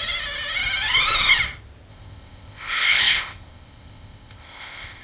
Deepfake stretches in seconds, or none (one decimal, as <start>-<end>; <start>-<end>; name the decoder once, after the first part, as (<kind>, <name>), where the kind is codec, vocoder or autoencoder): 1.9-5.0 (codec, ZipCodec)